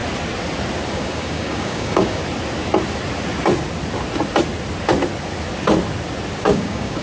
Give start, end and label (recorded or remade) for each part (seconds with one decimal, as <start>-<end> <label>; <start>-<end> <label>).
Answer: 0.0-0.9 recorded; 0.9-2.2 remade; 2.2-6.4 recorded; 6.4-7.0 remade